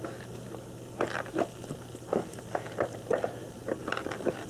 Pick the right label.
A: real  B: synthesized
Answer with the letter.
A